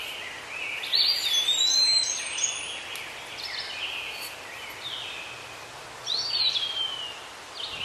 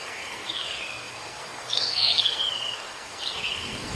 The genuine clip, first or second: first